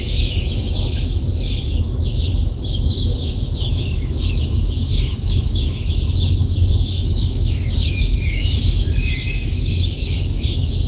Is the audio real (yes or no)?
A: no